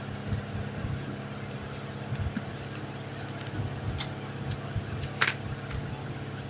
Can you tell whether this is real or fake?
real